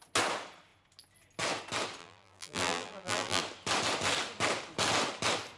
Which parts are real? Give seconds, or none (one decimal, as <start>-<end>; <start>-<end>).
0.0-2.0; 3.4-5.6